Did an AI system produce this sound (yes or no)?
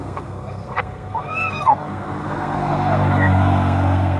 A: yes